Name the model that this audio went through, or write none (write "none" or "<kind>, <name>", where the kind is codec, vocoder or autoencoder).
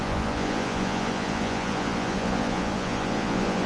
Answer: vocoder, Vocos